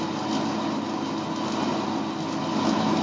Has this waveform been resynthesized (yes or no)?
no